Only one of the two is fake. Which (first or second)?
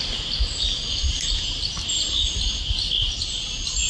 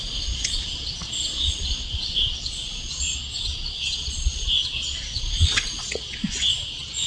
second